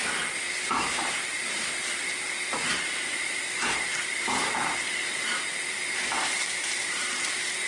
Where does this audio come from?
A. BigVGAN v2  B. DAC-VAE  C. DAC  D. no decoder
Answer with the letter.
A